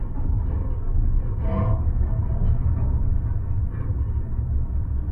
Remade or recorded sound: recorded